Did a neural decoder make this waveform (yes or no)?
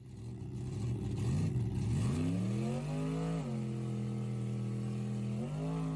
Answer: no